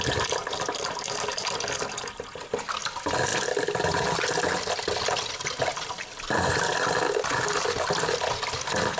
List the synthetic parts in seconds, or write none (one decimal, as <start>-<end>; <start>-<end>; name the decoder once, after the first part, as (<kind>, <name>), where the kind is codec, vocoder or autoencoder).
none